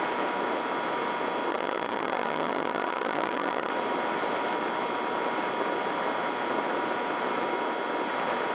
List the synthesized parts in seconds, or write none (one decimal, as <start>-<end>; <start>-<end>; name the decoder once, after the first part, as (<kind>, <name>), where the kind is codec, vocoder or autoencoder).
1.5-3.7 (vocoder, HiFi-GAN)